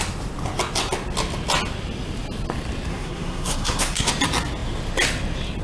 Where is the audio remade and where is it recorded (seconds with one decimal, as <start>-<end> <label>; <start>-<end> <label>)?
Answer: 0.0-2.9 recorded; 2.9-4.1 remade; 4.1-5.6 recorded